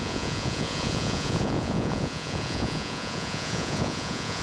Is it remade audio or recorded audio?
remade